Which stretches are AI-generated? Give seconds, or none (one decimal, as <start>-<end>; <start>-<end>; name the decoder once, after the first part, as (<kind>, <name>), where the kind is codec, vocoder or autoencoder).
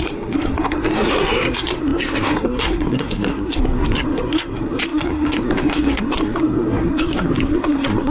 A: 0.0-8.1 (codec, SNAC)